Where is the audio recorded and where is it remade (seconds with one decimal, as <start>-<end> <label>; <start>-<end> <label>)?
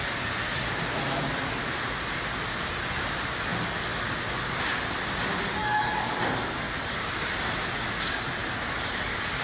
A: 0.0-5.6 recorded; 5.6-6.1 remade; 6.1-9.4 recorded